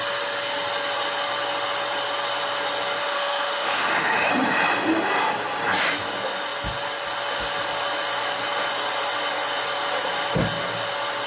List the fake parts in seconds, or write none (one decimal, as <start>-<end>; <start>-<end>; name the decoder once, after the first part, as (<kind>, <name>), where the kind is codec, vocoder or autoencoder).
3.0-4.3 (autoencoder, DAC-VAE)